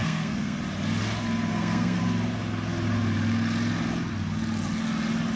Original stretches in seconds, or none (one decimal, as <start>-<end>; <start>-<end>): 0.6-1.5; 2.0-5.4